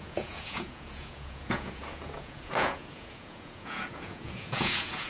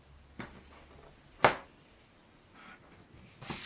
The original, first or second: second